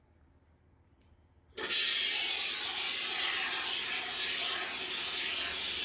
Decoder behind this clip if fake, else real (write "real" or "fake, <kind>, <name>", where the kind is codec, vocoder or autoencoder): real